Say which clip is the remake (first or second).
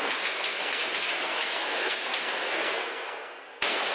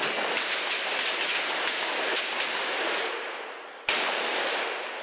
first